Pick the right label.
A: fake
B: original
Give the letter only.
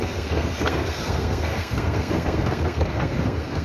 A